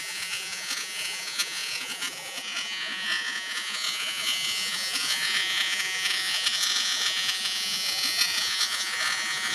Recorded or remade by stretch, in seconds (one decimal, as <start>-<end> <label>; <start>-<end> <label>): 0.0-9.5 remade